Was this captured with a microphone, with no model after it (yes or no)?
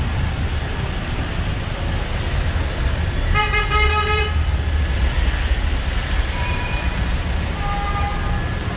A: yes